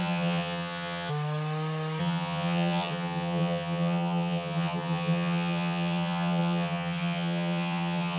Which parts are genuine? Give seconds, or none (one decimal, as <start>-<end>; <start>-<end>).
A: 1.1-2.0